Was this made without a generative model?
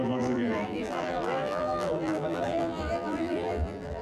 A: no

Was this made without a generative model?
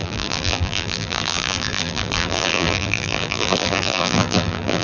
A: no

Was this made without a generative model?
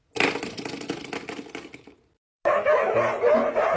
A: yes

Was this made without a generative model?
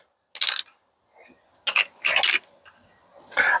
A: yes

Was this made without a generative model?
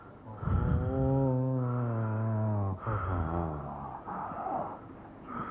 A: yes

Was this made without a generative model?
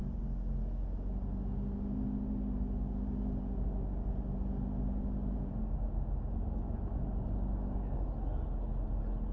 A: yes